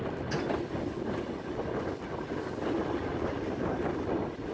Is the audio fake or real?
real